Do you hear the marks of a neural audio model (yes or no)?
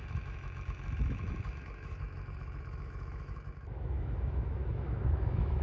yes